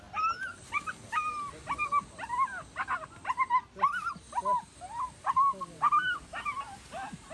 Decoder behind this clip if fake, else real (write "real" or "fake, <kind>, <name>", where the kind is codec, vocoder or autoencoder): real